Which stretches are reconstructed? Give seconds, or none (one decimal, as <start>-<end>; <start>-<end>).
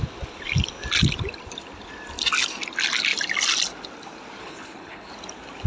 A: 4.4-5.1